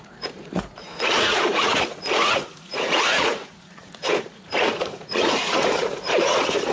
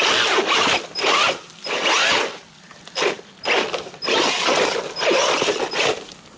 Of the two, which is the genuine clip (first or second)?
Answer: second